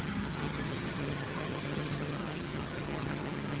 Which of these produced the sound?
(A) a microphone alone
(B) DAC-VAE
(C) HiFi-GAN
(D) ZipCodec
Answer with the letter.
C